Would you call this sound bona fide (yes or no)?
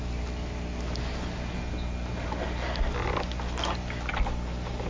yes